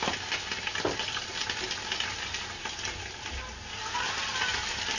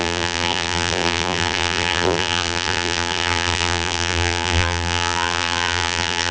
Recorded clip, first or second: first